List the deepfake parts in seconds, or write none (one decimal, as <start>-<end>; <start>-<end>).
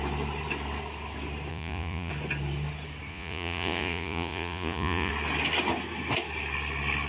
1.5-2.1; 3.1-5.1